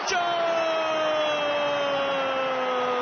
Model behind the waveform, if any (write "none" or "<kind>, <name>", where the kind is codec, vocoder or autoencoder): none